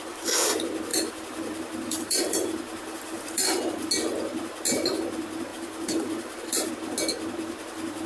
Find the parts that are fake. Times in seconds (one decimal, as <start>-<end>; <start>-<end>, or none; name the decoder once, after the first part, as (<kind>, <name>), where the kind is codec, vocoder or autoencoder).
0.9-3.6 (vocoder, BigVGAN v2); 5.5-6.7